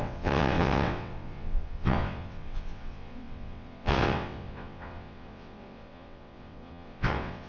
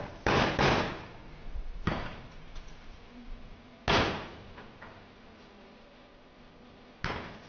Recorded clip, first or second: second